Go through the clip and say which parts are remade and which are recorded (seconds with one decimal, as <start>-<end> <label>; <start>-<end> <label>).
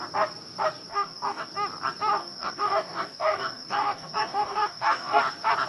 0.0-0.9 recorded; 0.9-1.5 remade; 1.5-2.2 recorded; 2.2-5.2 remade; 5.2-5.7 recorded